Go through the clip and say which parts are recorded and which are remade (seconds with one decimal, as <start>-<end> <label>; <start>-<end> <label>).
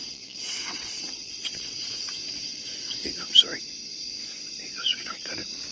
0.0-3.4 remade; 3.4-4.8 recorded; 4.8-5.3 remade; 5.3-5.7 recorded